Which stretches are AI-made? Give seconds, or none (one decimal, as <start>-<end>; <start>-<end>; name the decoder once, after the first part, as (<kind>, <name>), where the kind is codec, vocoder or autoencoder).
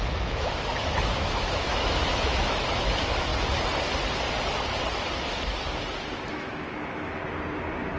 0.0-3.3 (autoencoder, DAC-VAE); 6.3-7.2